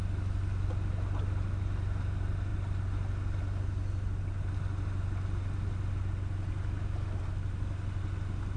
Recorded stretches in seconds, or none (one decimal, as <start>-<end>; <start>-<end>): 0.0-8.6